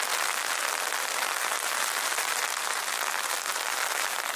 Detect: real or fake real